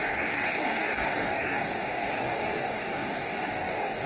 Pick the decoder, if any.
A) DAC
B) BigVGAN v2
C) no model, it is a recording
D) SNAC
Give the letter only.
A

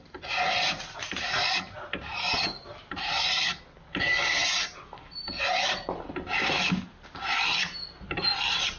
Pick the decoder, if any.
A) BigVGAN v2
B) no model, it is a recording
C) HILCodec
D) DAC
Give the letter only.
B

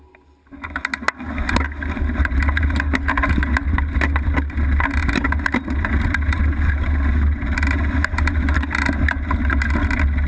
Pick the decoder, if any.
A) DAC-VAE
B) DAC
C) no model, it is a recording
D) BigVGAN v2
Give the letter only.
C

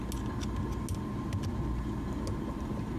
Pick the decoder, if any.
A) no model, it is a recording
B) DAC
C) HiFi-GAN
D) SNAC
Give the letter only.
A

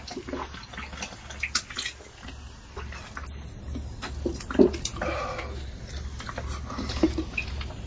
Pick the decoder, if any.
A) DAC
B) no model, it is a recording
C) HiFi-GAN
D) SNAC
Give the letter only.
B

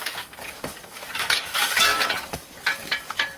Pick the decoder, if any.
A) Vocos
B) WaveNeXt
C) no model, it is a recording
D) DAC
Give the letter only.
D